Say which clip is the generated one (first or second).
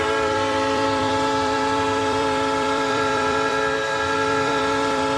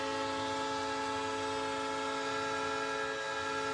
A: first